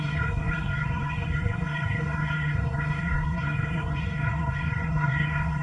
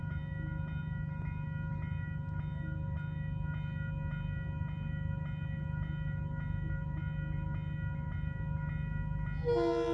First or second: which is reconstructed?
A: first